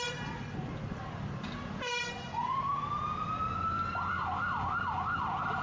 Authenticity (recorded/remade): remade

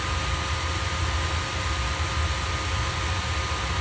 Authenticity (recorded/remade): recorded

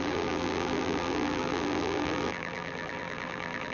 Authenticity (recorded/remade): remade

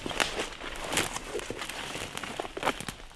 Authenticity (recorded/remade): recorded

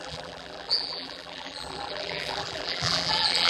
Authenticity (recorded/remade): remade